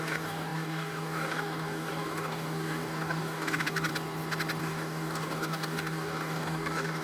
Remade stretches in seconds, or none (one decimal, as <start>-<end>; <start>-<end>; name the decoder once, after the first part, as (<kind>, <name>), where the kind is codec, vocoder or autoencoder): 0.0-3.9 (codec, DAC); 4.6-7.0